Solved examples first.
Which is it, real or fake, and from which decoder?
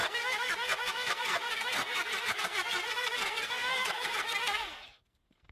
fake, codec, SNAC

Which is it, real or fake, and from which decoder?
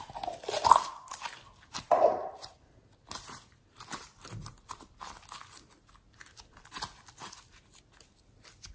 real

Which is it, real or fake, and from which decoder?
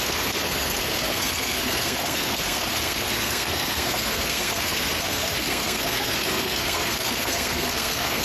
fake, codec, SNAC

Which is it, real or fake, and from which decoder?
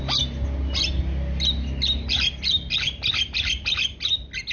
real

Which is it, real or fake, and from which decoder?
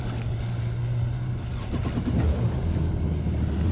real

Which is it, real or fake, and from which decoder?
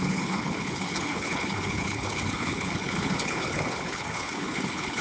fake, codec, HILCodec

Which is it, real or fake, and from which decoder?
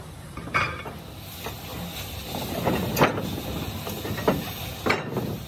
real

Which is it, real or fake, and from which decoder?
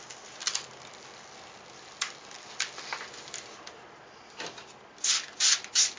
real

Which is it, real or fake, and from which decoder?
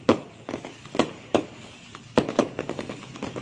fake, codec, DAC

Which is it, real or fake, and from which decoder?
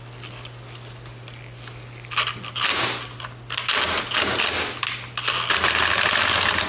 real